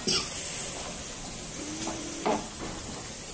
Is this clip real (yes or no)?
yes